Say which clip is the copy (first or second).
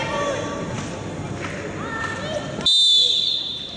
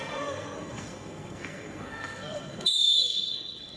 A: second